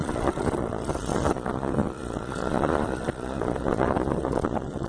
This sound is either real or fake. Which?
fake